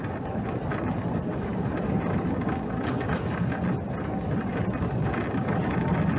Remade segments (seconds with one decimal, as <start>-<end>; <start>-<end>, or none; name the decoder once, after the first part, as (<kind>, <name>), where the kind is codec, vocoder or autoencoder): 1.5-2.2 (vocoder, BigVGAN v2)